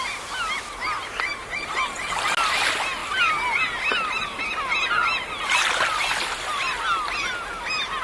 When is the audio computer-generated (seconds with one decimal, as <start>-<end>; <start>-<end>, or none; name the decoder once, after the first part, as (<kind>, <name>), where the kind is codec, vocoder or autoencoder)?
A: 1.3-2.0 (vocoder, BigVGAN v2)